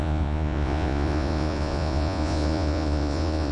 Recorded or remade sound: remade